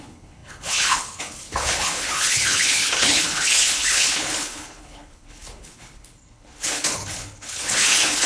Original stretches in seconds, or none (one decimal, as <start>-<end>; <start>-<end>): none